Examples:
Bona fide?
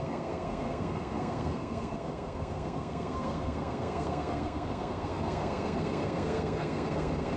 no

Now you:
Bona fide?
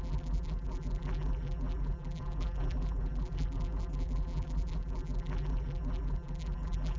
no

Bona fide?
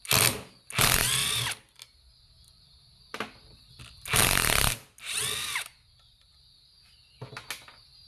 yes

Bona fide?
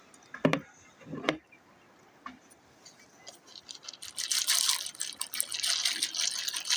yes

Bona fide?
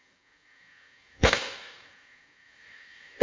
no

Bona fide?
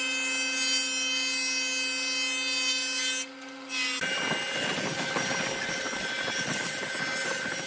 yes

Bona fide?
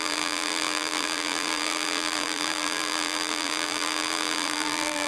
no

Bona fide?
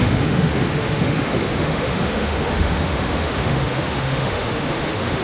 no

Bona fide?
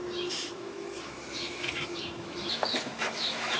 no